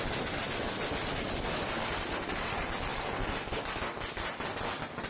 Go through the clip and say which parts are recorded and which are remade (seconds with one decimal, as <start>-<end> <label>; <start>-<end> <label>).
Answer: 0.0-5.1 recorded